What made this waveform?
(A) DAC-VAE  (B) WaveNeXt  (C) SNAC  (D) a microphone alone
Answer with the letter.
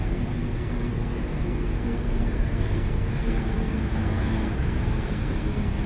C